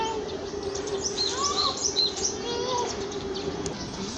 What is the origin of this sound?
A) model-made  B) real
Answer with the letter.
B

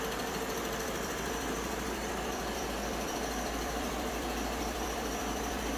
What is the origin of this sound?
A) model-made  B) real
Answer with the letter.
A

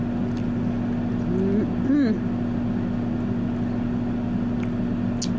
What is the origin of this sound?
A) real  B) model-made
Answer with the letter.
A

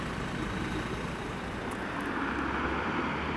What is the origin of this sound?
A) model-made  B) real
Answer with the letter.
B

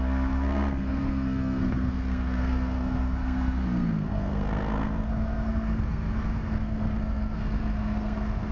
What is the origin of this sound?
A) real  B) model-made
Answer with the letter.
B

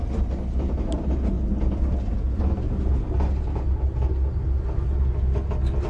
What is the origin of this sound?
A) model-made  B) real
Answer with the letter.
B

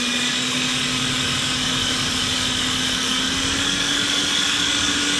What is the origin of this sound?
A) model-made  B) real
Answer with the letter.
A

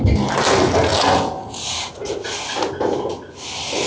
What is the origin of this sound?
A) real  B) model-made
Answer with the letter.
A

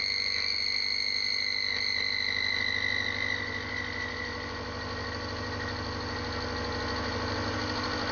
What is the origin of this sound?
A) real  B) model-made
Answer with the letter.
A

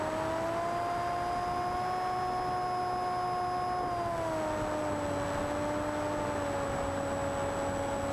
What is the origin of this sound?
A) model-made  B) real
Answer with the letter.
B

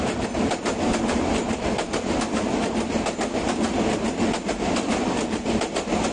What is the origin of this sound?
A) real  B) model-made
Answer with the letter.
A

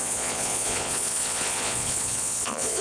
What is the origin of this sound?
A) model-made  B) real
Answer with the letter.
A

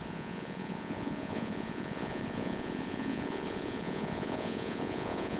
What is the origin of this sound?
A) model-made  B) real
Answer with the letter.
A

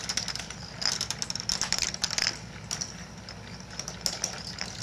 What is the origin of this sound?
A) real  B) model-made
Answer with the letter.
A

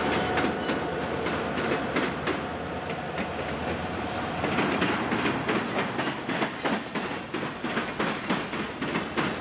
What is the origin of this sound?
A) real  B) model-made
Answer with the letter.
A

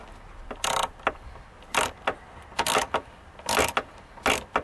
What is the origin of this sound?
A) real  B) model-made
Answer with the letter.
A